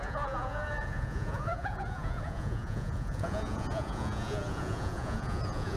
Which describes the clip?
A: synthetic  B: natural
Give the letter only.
A